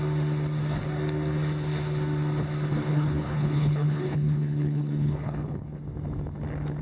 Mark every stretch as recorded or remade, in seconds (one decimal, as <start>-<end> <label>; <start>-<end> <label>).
0.0-2.9 recorded; 2.9-5.8 remade; 5.8-6.8 recorded